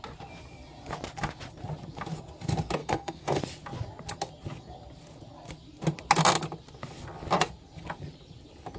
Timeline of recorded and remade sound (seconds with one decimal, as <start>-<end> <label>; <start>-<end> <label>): 0.0-2.8 recorded; 2.8-3.4 remade; 3.4-8.8 recorded